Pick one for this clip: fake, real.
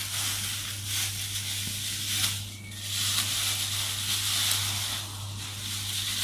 fake